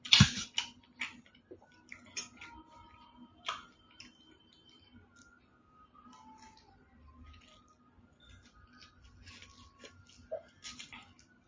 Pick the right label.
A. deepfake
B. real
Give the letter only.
B